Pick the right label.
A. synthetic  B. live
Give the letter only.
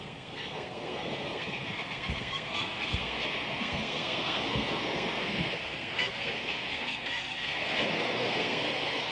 A